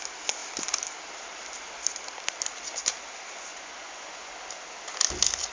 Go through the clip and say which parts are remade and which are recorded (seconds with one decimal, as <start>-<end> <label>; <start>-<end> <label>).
0.0-3.5 recorded; 3.5-4.3 remade; 4.3-5.5 recorded